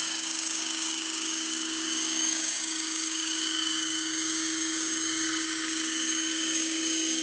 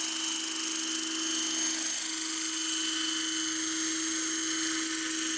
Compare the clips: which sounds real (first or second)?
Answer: second